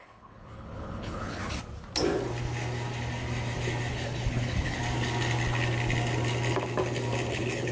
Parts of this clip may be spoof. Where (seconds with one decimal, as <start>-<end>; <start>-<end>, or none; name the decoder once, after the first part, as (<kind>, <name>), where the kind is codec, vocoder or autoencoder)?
0.0-1.4 (codec, HILCodec); 3.9-4.8; 7.3-7.7